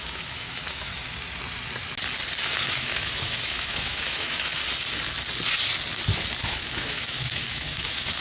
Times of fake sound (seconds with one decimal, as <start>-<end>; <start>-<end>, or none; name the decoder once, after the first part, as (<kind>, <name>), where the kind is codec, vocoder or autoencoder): 0.0-0.9 (autoencoder, DAC-VAE); 2.6-4.6; 6.4-8.2